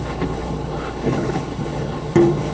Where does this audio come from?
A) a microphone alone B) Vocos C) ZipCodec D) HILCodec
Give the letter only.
D